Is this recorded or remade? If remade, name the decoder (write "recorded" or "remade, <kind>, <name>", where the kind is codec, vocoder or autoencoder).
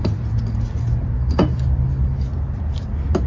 recorded